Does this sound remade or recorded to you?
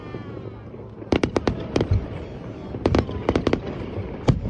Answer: remade